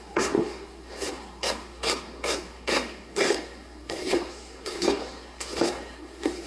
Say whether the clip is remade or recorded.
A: remade